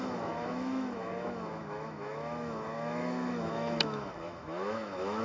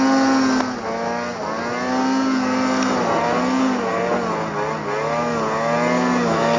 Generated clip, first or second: first